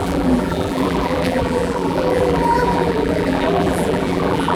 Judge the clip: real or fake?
fake